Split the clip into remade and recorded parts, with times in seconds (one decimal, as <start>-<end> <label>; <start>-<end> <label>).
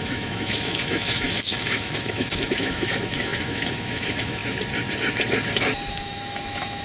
0.0-4.4 remade; 4.4-5.9 recorded; 5.9-6.8 remade